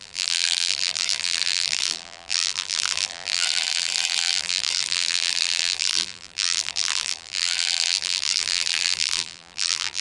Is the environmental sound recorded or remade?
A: remade